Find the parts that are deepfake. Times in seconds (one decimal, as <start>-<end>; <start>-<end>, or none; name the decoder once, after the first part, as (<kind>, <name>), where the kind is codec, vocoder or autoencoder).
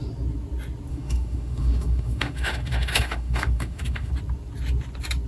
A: 0.9-4.1 (autoencoder, DAC-VAE)